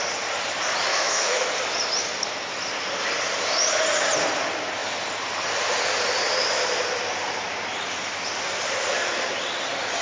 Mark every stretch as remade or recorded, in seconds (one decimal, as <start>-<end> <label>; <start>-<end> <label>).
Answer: 0.0-0.9 recorded; 0.9-1.5 remade; 1.5-10.0 recorded